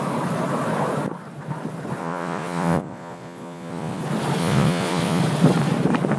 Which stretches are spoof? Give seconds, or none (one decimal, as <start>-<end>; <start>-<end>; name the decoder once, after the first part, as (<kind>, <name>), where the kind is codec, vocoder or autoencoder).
2.0-4.0 (vocoder, Vocos); 4.4-5.2